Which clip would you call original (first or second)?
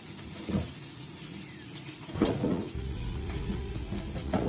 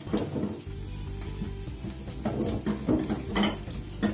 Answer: second